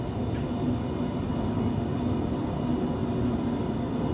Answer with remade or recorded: recorded